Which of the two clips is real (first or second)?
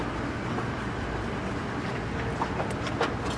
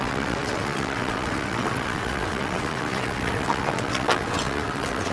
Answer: first